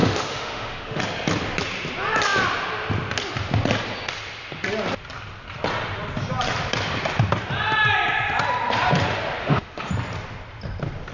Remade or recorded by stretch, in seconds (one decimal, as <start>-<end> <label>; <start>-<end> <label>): 0.0-1.0 remade; 1.0-9.4 recorded; 9.4-9.9 remade; 9.9-11.1 recorded